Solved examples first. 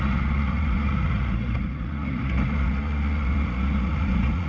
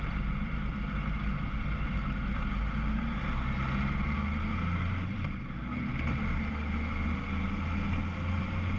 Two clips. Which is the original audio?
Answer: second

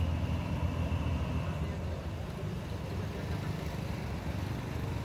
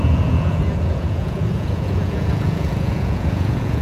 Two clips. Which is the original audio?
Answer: first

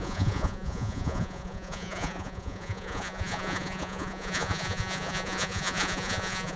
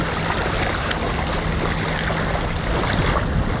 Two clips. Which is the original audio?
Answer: second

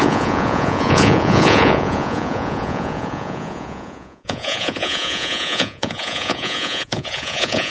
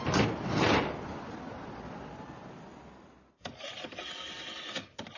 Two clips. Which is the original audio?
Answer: second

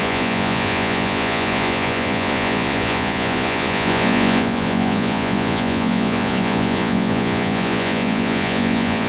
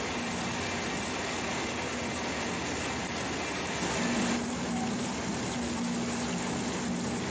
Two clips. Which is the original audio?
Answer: second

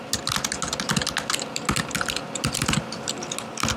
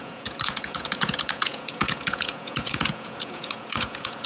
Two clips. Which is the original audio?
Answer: first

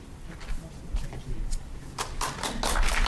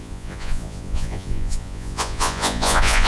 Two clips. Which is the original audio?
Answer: first